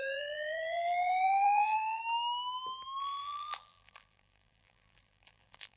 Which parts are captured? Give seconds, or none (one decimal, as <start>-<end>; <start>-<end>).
2.0-3.0